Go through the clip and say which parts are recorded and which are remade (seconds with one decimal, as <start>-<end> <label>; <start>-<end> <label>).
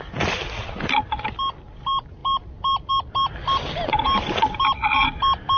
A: 0.0-5.6 recorded